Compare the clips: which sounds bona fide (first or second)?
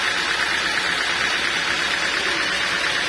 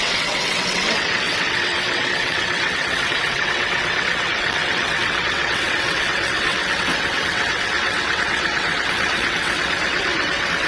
first